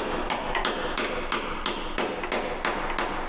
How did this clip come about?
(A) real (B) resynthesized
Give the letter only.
A